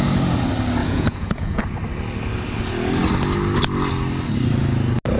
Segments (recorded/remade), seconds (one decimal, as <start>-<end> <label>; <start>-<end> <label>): 0.0-0.8 recorded; 0.8-1.6 remade; 1.6-5.2 recorded